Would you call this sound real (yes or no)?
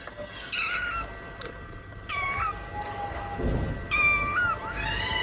yes